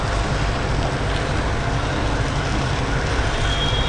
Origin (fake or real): real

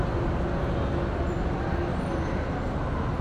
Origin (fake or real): real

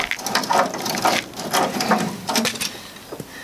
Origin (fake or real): real